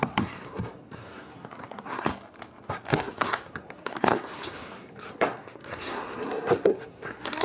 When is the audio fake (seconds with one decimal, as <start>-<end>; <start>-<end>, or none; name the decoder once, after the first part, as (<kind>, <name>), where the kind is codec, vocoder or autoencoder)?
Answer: 0.0-2.1 (codec, SNAC); 2.7-7.4